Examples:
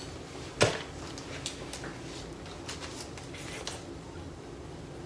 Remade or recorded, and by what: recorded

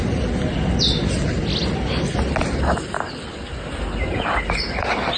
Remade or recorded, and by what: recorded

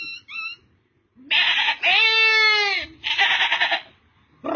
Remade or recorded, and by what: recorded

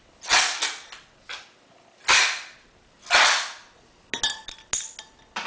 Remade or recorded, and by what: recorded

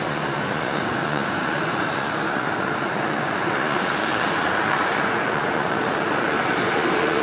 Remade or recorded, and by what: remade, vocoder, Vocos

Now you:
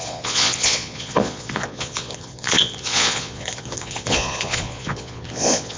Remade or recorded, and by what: remade, vocoder, Vocos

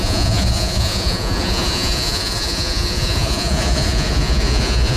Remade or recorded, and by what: remade, vocoder, Vocos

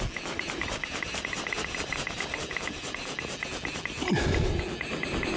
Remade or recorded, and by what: recorded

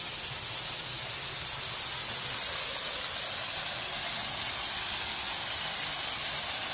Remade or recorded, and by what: recorded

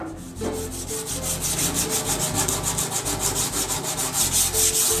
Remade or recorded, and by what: recorded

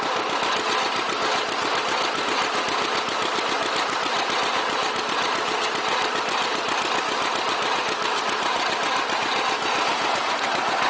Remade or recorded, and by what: recorded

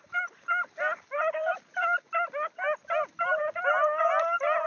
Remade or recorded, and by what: recorded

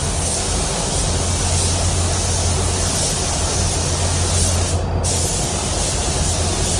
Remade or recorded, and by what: recorded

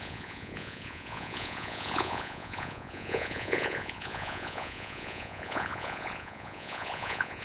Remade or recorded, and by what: remade, vocoder, Vocos